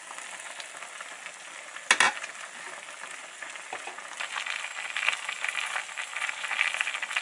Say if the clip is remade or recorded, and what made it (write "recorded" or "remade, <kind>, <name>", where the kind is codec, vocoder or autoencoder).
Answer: recorded